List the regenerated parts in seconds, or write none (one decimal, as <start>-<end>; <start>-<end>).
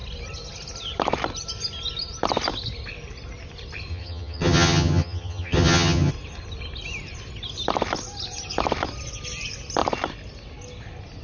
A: 3.9-6.1